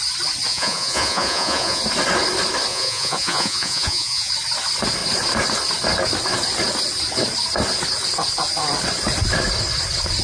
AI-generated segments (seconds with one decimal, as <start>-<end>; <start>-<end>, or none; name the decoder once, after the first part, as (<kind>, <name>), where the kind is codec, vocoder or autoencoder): 0.5-1.8 (vocoder, Vocos); 2.7-4.3